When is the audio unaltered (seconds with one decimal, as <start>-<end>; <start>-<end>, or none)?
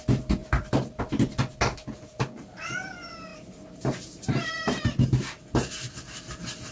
0.0-0.4; 1.0-3.3; 4.8-6.7